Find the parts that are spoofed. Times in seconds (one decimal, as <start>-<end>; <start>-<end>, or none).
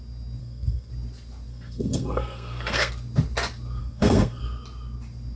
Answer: 0.4-0.9; 1.5-2.9; 3.8-4.4